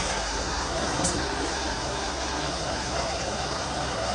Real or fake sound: fake